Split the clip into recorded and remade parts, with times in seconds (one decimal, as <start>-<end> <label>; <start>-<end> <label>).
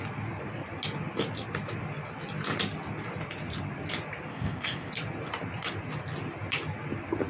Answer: 0.0-4.3 recorded; 4.3-4.9 remade; 4.9-7.3 recorded